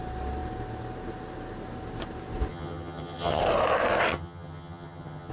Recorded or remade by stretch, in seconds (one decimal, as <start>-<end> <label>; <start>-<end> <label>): 0.0-2.5 recorded; 2.5-3.4 remade; 3.4-4.1 recorded; 4.1-5.3 remade